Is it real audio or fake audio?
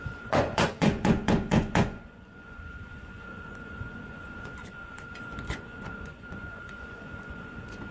fake